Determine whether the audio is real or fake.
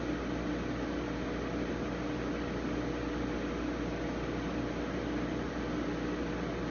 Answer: real